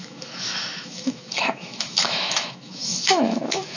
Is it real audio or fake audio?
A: fake